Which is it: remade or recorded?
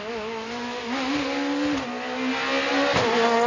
recorded